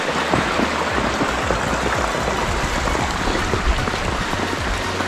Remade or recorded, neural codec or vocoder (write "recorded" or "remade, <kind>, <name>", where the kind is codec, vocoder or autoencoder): recorded